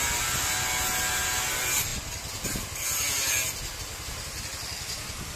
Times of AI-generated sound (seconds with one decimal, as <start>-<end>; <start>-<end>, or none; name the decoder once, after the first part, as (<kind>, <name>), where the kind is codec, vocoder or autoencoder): none